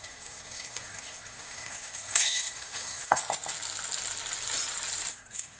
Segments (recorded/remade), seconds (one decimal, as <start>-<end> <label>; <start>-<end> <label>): 0.0-3.2 remade; 3.2-5.1 recorded; 5.1-5.6 remade